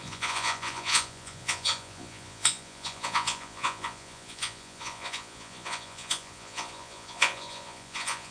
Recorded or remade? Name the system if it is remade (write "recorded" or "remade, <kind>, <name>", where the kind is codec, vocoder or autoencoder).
remade, vocoder, Vocos